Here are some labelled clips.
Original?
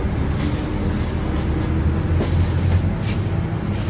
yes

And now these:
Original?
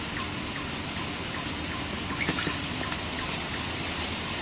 yes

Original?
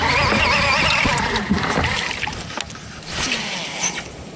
yes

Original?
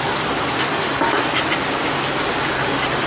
yes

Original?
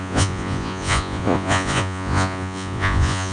no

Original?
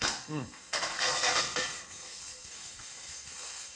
no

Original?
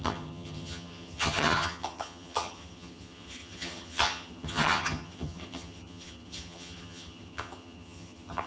no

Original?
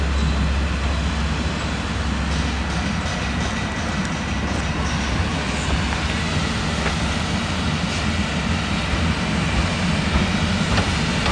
yes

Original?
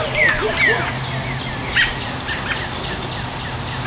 yes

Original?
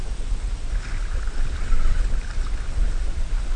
yes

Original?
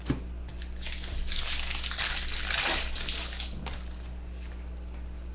yes